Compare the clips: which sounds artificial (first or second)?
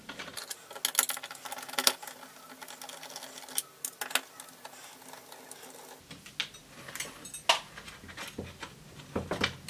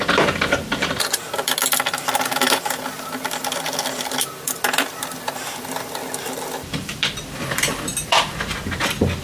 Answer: second